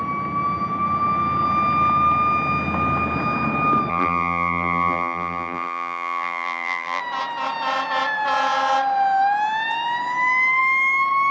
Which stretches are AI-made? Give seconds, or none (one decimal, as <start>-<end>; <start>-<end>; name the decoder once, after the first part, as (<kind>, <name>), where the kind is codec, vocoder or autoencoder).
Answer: 3.9-7.0 (vocoder, BigVGAN v2)